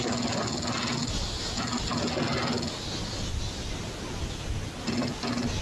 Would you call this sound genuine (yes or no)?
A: yes